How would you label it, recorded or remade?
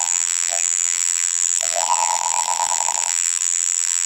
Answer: remade